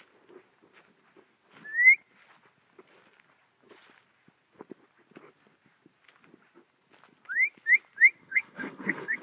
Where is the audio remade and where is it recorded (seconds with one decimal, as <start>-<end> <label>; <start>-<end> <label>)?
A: 0.0-8.2 recorded; 8.2-9.2 remade